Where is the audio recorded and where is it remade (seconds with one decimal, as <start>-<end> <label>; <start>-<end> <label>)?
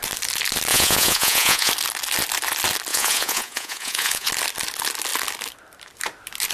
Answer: 0.0-0.7 recorded; 0.7-1.7 remade; 1.7-2.9 recorded; 2.9-4.3 remade; 4.3-6.5 recorded